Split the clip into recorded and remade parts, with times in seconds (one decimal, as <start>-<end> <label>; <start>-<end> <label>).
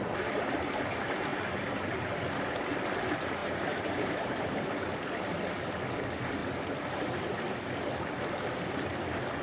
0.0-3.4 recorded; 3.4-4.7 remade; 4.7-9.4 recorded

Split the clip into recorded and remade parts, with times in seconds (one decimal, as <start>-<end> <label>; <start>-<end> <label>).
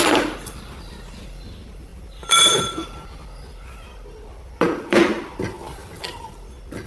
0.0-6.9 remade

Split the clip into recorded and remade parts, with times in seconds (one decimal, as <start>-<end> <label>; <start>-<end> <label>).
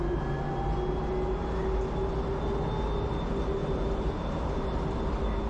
0.0-3.6 recorded; 3.6-5.0 remade; 5.0-5.5 recorded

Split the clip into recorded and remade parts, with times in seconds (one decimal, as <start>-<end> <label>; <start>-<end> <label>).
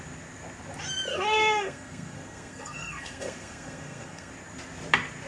0.0-1.1 recorded; 1.1-4.3 remade; 4.3-5.3 recorded